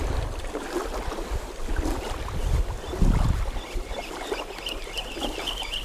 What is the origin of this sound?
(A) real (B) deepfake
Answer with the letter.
A